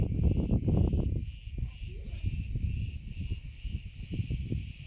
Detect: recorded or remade recorded